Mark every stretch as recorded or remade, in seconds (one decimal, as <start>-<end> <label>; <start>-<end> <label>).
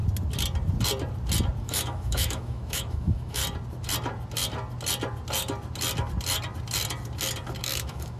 0.0-1.6 recorded; 1.6-3.4 remade; 3.4-7.6 recorded; 7.6-8.2 remade